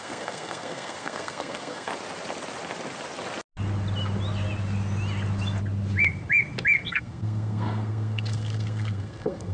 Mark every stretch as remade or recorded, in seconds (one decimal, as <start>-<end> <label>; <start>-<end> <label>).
0.0-1.9 remade; 1.9-6.9 recorded; 6.9-9.5 remade